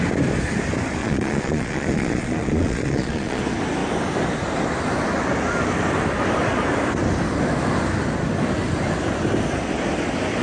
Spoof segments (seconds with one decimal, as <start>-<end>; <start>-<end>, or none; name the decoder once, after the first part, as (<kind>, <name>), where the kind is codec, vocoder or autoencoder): 1.0-3.4 (vocoder, Vocos)